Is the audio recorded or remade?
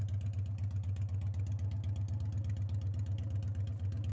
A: recorded